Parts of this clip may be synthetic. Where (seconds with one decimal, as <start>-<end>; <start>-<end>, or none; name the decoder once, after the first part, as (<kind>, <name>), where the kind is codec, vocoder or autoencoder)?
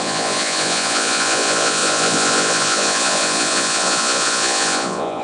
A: 0.0-5.2 (vocoder, Vocos)